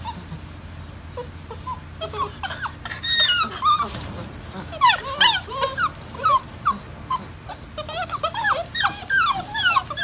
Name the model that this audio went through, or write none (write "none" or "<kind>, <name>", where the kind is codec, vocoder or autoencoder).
none